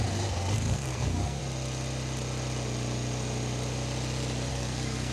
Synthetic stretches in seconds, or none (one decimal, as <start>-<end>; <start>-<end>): 0.0-1.4; 4.5-5.1